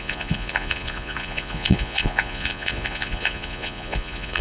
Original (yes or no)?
no